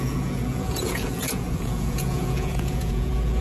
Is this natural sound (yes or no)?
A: no